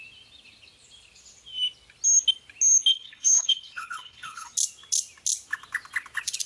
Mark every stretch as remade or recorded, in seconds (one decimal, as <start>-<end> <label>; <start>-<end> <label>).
0.0-2.9 recorded; 2.9-4.5 remade; 4.5-6.5 recorded